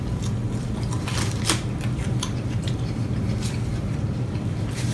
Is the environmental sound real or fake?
fake